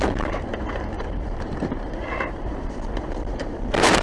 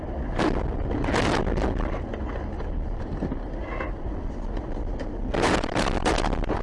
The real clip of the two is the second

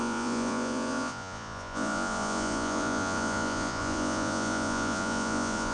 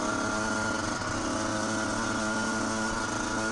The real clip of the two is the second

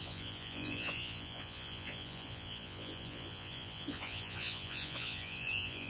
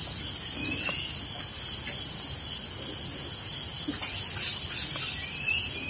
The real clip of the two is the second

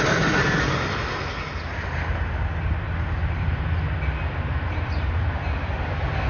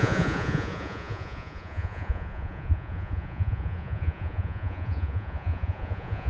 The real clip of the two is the first